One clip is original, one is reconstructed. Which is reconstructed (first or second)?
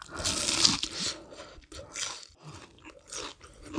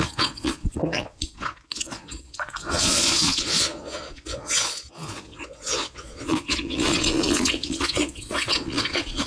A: second